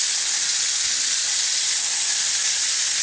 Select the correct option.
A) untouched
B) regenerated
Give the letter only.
A